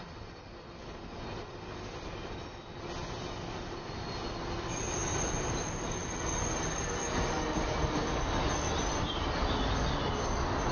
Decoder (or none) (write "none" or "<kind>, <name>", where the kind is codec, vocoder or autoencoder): none